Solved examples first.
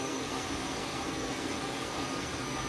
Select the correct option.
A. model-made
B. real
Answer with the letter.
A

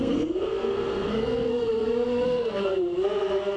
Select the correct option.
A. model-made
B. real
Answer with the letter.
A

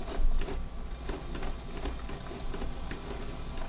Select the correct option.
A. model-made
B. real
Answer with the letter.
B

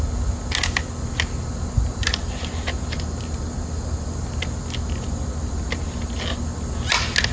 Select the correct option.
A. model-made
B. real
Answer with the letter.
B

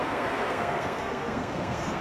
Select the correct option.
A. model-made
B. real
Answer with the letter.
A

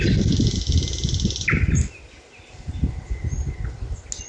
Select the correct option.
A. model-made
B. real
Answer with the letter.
B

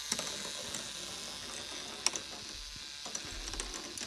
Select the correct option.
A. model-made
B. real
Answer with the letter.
B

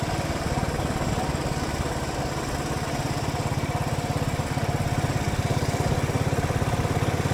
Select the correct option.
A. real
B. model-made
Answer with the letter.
A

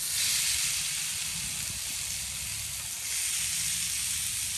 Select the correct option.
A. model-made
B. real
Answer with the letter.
B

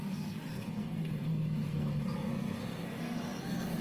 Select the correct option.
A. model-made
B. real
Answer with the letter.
A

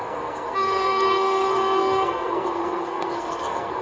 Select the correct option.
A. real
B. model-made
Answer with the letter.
B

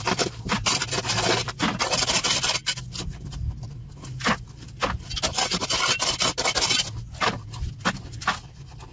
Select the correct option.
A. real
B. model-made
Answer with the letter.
A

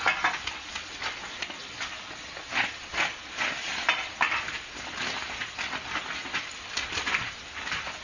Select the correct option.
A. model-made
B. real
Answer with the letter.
B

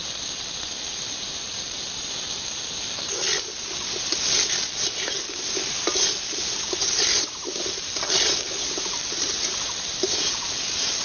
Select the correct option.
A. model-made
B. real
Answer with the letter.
B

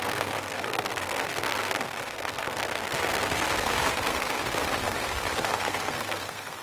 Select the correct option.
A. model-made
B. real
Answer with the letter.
A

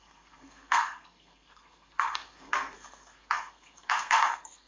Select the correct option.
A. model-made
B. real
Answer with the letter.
A